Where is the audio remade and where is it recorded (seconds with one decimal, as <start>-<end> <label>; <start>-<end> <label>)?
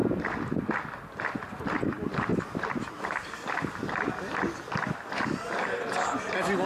0.0-6.7 recorded